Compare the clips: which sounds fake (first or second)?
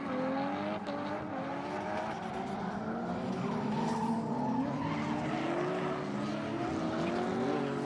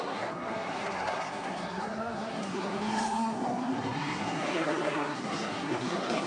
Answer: second